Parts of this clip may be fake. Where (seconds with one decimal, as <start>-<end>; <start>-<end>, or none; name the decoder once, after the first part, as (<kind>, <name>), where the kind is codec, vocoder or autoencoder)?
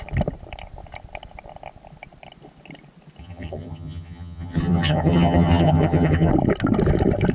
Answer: 3.2-6.3 (vocoder, HiFi-GAN)